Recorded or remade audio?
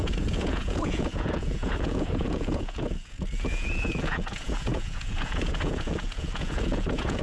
remade